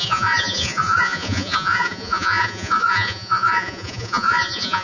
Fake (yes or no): yes